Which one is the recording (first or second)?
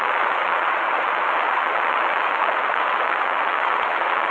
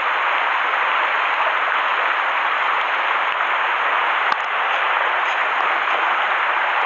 second